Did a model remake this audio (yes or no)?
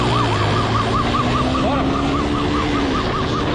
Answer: no